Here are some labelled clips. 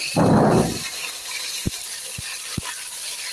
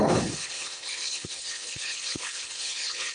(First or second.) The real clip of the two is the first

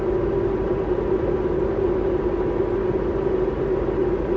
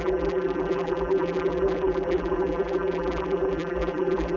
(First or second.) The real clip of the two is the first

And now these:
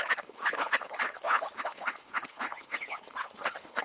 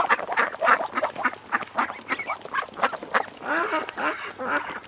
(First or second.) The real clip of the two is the second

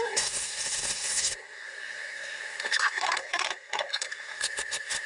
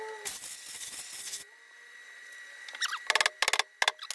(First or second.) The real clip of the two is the second